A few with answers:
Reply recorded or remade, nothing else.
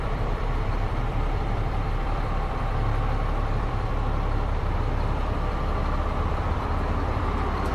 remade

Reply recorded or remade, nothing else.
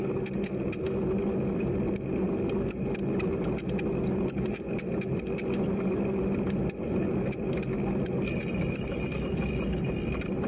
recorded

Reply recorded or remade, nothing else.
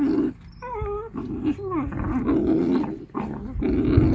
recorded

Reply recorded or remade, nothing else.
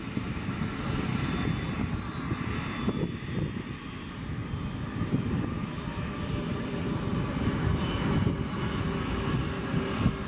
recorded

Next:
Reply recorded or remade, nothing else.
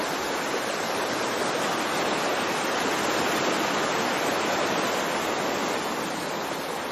recorded